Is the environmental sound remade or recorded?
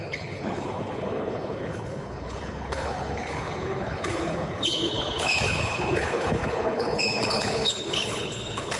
remade